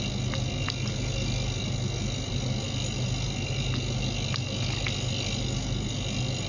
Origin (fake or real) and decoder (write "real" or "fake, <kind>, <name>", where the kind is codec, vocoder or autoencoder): real